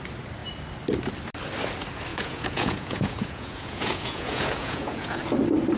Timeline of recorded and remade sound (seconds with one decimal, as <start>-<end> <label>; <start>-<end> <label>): 0.0-2.1 recorded; 2.1-5.2 remade; 5.2-5.8 recorded